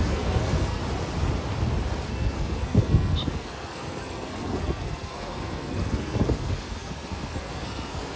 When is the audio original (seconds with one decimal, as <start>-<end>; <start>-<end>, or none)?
0.8-2.1